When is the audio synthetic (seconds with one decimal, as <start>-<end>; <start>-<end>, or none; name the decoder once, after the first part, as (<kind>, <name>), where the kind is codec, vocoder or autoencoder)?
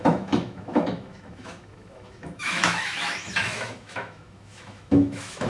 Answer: 0.0-5.5 (autoencoder, DAC-VAE)